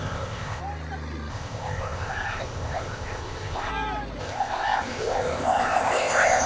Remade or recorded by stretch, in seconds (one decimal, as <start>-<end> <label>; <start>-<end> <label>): 0.0-0.6 remade; 0.6-1.3 recorded; 1.3-3.7 remade; 3.7-4.2 recorded; 4.2-6.5 remade

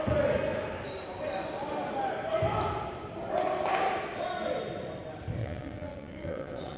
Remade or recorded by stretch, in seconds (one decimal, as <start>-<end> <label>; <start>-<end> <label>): 0.0-5.4 recorded; 5.4-6.8 remade

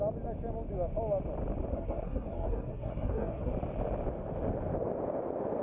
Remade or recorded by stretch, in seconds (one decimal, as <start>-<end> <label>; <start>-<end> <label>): 0.0-1.7 recorded; 1.7-3.5 remade; 3.5-5.6 recorded

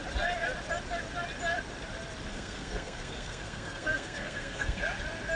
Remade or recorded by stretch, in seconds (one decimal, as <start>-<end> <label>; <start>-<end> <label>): 0.0-2.3 recorded; 2.3-4.8 remade; 4.8-5.4 recorded

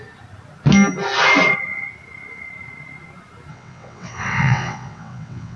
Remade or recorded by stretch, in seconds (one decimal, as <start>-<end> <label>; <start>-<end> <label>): 0.0-3.5 recorded; 3.5-5.6 remade

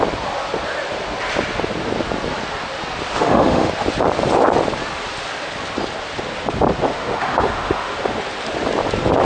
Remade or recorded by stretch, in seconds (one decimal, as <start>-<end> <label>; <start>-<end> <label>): 0.0-3.1 recorded; 3.1-3.7 remade; 3.7-6.9 recorded; 6.9-8.2 remade; 8.2-9.2 recorded